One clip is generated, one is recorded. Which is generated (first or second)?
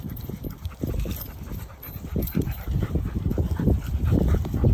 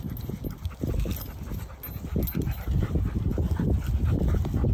first